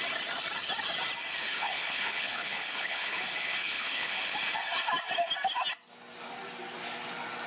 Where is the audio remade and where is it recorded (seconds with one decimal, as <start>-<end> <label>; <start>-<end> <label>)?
0.0-1.4 recorded; 1.4-4.2 remade; 4.2-7.5 recorded